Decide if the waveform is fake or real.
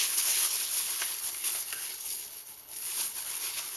fake